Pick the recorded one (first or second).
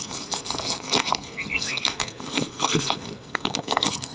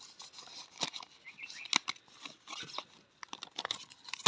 second